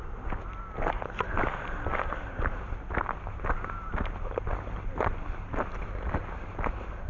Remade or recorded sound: recorded